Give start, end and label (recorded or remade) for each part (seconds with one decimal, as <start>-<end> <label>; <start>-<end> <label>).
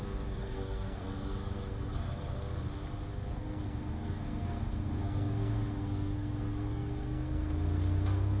0.0-2.5 remade; 2.5-3.3 recorded; 3.3-8.4 remade